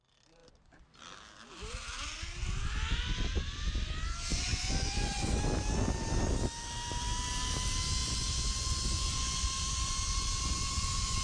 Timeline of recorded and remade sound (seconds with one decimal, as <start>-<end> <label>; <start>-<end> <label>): 0.0-4.3 recorded; 4.3-5.4 remade; 5.4-8.0 recorded; 8.0-11.2 remade